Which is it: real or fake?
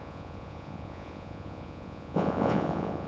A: fake